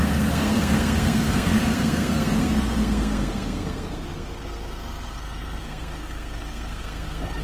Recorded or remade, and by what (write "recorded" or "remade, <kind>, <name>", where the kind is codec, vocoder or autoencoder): remade, codec, SNAC